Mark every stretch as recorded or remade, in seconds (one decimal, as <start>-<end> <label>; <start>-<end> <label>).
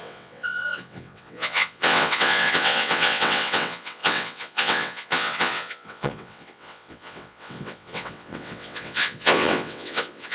0.0-10.3 remade